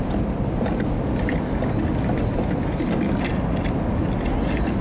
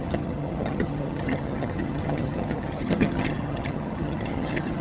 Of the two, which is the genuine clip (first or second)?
first